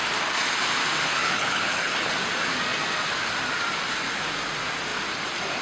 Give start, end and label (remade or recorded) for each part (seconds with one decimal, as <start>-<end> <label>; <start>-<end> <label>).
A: 0.0-1.2 recorded; 1.2-2.1 remade; 2.1-5.6 recorded